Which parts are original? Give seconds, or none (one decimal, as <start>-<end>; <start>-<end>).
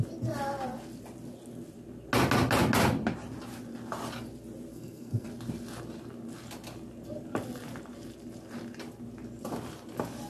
0.0-4.7; 5.3-10.3